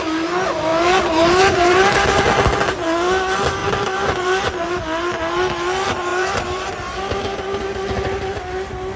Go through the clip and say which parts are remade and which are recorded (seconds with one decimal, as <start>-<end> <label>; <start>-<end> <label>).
0.0-0.7 recorded; 0.7-2.2 remade; 2.2-3.6 recorded; 3.6-4.8 remade; 4.8-6.1 recorded; 6.1-6.7 remade; 6.7-9.0 recorded